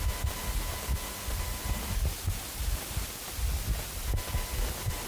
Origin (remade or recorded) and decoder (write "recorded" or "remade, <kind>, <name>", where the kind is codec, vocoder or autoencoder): recorded